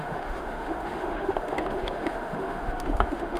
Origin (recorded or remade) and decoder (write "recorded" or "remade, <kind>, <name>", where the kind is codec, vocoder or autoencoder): remade, autoencoder, DAC-VAE